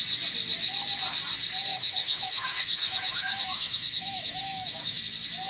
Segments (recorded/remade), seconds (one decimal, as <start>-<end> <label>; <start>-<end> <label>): 0.0-1.7 recorded; 1.7-5.0 remade; 5.0-5.5 recorded